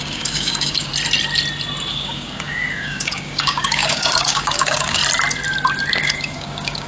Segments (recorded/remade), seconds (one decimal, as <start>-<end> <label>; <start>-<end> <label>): 0.0-0.9 remade; 0.9-1.9 recorded; 1.9-5.0 remade; 5.0-6.0 recorded; 6.0-6.9 remade